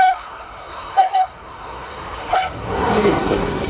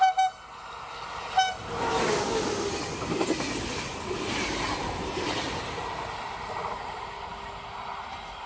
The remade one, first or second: first